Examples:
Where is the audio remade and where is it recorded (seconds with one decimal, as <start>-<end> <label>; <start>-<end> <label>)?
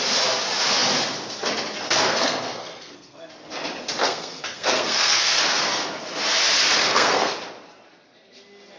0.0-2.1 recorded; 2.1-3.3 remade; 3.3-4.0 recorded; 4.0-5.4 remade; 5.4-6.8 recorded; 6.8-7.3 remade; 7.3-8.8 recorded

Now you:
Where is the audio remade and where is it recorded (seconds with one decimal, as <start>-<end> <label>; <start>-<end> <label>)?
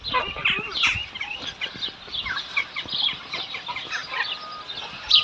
0.0-0.4 remade; 0.4-3.5 recorded; 3.5-4.0 remade; 4.0-5.2 recorded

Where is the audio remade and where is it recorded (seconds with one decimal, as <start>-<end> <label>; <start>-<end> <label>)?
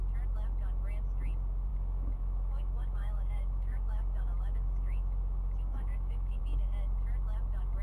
0.0-1.7 recorded; 1.7-6.4 remade; 6.4-7.8 recorded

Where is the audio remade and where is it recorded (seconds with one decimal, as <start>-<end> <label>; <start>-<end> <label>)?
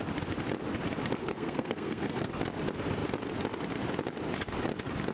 0.0-1.2 recorded; 1.2-2.3 remade; 2.3-5.1 recorded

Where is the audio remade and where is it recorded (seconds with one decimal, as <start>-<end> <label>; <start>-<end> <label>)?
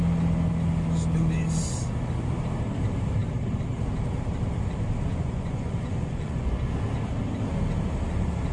0.0-5.1 recorded; 5.1-6.5 remade; 6.5-8.5 recorded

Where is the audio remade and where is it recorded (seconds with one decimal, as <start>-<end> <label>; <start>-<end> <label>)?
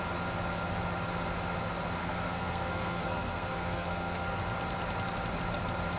0.0-2.0 recorded; 2.0-4.4 remade; 4.4-6.0 recorded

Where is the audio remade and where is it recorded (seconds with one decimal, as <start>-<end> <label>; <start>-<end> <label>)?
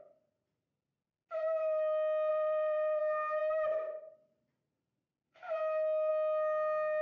0.0-2.3 recorded; 2.3-3.0 remade; 3.0-7.0 recorded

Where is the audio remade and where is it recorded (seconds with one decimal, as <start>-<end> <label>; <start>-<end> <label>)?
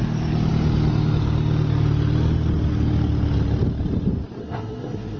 0.0-4.4 recorded; 4.4-5.2 remade